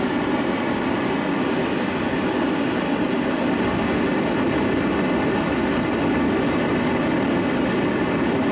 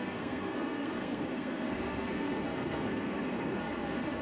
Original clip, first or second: first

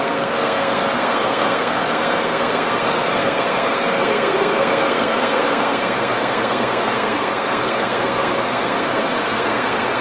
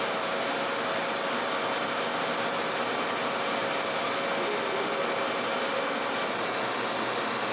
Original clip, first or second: second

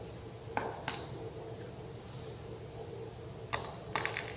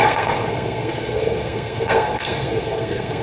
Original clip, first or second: first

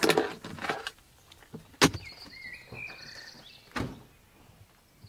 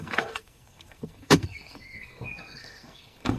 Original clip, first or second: first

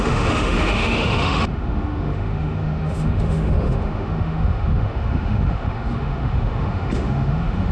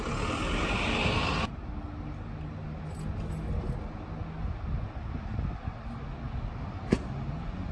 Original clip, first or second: second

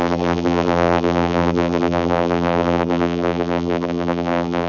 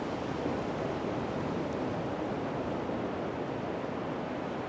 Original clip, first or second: second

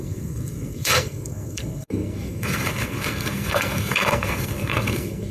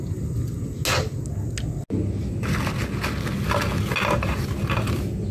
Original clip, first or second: second